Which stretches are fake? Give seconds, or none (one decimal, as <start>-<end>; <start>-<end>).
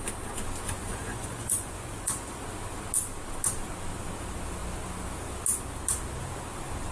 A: 0.8-2.4